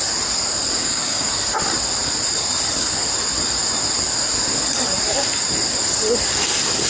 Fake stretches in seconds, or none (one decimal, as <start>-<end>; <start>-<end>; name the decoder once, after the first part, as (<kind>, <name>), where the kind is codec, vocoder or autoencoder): 0.8-1.3 (codec, DAC)